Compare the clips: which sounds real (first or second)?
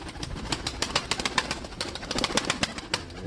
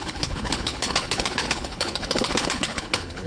first